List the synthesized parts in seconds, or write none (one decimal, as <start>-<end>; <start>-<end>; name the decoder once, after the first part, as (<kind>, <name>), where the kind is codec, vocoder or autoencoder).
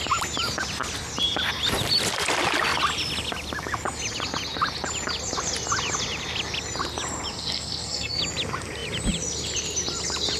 7.3-8.2 (codec, SNAC)